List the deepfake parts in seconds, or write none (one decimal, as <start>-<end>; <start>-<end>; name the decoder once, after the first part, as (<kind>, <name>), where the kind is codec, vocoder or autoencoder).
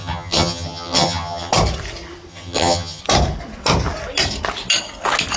0.0-1.5 (vocoder, HiFi-GAN); 2.3-3.0